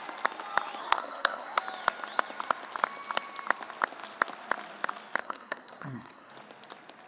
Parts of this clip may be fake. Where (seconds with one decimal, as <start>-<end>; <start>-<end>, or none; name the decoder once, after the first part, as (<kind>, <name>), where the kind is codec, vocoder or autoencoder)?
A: 0.8-1.6 (codec, SNAC); 5.2-6.3